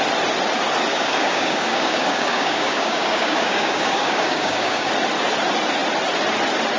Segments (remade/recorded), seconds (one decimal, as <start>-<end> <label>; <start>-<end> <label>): 0.0-0.9 recorded; 0.9-4.9 remade; 4.9-6.8 recorded